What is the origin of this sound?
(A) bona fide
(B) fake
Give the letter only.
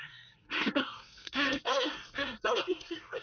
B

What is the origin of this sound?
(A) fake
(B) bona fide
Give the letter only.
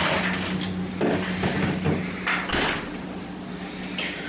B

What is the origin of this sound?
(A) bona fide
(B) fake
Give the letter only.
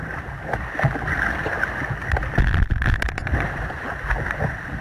A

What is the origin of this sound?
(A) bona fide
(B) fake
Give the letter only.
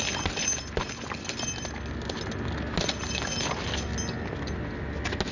A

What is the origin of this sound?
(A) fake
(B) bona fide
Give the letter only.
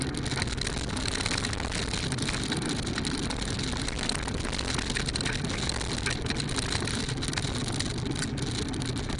B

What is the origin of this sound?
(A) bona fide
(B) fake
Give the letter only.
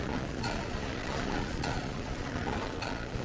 B